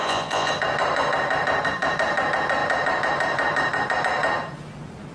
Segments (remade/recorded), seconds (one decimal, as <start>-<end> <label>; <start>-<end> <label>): 0.0-0.5 remade; 0.5-5.1 recorded